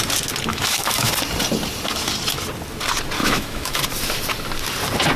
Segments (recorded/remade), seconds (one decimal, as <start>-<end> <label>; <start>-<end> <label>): 0.0-0.5 recorded; 0.5-1.1 remade; 1.1-3.2 recorded; 3.2-3.8 remade; 3.8-5.2 recorded